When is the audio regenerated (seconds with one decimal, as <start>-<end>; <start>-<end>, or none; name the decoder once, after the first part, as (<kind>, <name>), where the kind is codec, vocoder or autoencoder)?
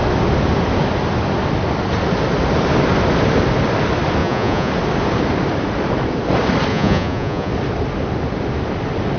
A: 4.2-4.7 (vocoder, Vocos); 6.7-7.5